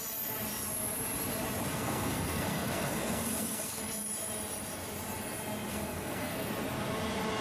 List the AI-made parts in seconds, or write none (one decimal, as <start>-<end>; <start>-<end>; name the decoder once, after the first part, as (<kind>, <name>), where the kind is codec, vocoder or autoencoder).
1.7-3.8 (codec, SNAC); 5.7-6.5